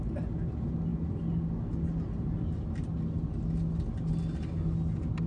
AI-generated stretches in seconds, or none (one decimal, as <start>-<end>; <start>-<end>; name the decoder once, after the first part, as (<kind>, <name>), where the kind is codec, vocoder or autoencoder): none